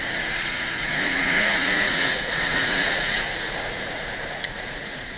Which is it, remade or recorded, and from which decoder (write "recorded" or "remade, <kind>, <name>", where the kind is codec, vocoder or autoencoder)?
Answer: remade, vocoder, Vocos